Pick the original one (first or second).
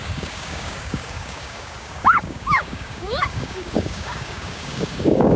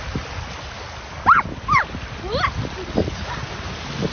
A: second